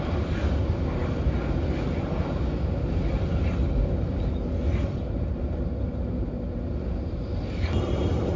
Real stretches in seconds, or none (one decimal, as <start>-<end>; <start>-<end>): 0.0-8.4